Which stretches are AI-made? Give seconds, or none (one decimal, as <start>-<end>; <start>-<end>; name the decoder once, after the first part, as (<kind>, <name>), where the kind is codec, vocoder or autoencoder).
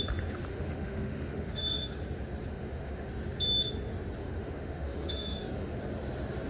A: 0.5-2.0 (autoencoder, DAC-VAE); 2.5-3.1; 4.2-5.8